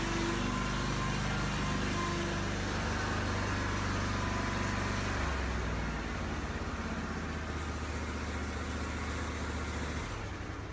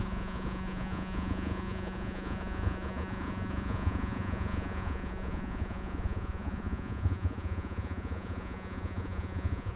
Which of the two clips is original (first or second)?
first